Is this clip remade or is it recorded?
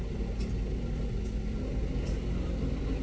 recorded